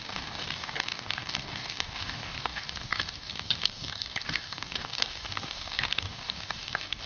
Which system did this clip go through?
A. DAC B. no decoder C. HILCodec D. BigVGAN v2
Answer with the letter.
A